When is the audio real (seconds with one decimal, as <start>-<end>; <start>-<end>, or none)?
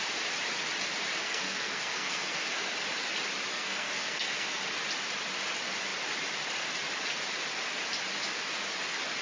0.0-1.2; 2.7-3.5; 4.6-9.2